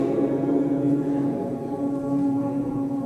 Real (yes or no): no